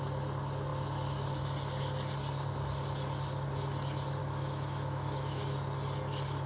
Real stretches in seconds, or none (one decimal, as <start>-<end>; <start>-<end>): 0.0-4.2; 5.4-6.5